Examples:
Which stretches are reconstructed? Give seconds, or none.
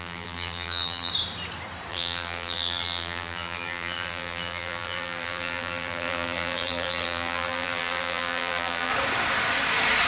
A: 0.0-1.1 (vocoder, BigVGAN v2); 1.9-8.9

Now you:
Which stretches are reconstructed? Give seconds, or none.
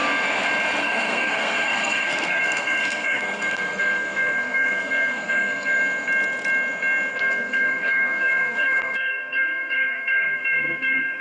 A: 0.8-5.8 (codec, SNAC); 7.1-11.2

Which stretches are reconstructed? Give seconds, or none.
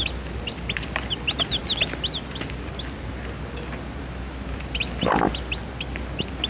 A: none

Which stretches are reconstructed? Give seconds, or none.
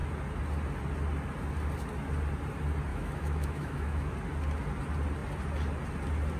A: 2.9-4.1 (autoencoder, DAC-VAE)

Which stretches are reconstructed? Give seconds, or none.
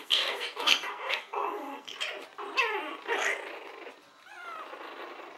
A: 0.0-1.9 (codec, SNAC)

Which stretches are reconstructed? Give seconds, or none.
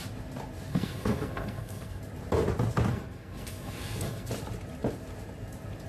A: 0.7-2.0 (codec, SNAC); 2.9-4.3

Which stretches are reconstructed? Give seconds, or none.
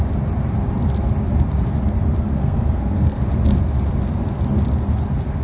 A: 2.3-3.2 (codec, SNAC)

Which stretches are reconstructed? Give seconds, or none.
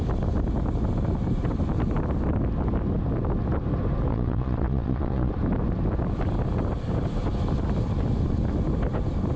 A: 4.1-5.3 (vocoder, Vocos)